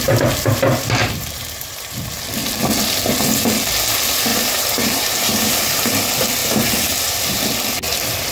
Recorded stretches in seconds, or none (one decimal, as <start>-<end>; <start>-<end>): 0.0-1.0; 1.9-4.3; 6.0-8.3